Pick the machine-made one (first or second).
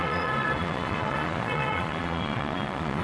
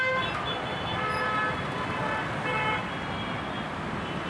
first